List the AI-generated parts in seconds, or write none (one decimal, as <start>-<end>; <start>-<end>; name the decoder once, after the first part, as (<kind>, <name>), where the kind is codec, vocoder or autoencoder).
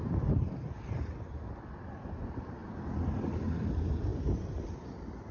none